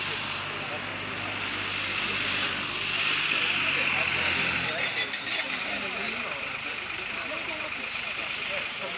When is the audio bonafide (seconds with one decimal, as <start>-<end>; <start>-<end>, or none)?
0.0-9.0